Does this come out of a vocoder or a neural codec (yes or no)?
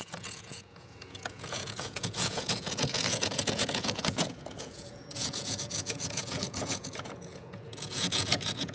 yes